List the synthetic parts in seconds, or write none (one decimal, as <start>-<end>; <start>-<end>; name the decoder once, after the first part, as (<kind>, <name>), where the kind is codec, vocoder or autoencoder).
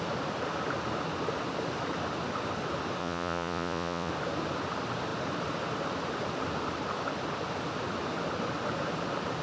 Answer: 3.0-4.1 (vocoder, Vocos)